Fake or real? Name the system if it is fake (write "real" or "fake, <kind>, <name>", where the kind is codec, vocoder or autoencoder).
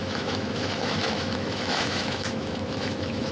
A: fake, autoencoder, DAC-VAE